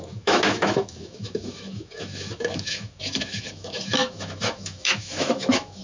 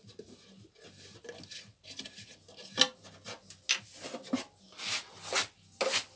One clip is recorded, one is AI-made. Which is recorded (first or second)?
second